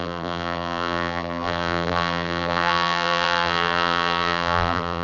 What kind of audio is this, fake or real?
fake